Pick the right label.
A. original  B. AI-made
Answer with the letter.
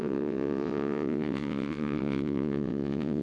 B